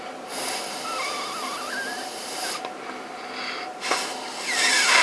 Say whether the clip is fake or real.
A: real